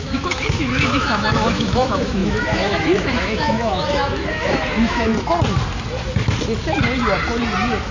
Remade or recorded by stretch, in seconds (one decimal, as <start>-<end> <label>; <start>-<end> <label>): 0.0-5.1 remade; 5.1-7.9 recorded